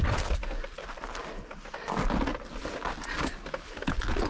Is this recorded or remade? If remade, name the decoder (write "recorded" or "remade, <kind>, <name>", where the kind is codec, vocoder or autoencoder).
recorded